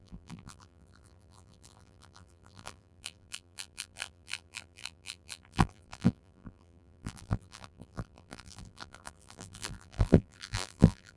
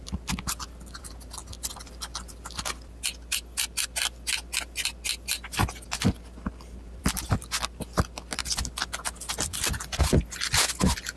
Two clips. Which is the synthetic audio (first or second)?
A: first